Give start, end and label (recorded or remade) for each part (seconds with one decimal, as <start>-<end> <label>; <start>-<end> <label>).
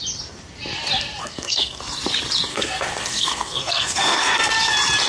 0.0-1.2 recorded; 1.2-1.8 remade; 1.8-2.5 recorded; 2.5-4.5 remade; 4.5-5.1 recorded